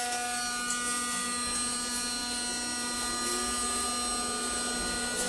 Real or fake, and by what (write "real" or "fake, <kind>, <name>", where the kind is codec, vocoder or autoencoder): real